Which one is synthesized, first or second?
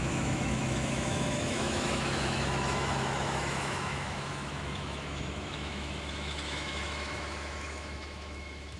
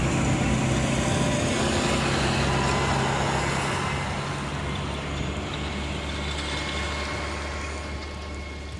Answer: first